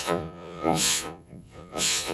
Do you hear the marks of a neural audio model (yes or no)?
yes